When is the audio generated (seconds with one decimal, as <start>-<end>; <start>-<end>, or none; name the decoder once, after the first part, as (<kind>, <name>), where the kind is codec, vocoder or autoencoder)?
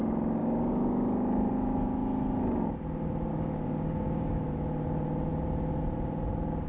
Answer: 0.4-1.5 (codec, DAC); 3.3-4.5